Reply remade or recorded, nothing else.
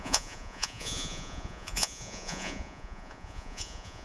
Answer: remade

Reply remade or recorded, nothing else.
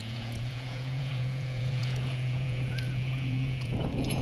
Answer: remade